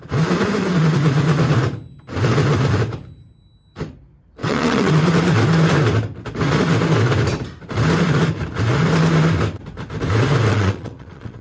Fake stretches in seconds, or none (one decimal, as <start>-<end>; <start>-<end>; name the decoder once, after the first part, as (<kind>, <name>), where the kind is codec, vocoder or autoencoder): 4.4-4.9 (vocoder, WaveNeXt); 10.5-11.4